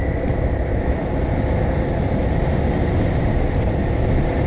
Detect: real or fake real